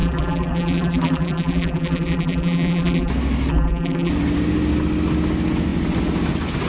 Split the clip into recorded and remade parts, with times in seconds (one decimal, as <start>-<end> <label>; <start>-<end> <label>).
0.0-3.1 remade; 3.1-3.5 recorded; 3.5-4.1 remade; 4.1-6.7 recorded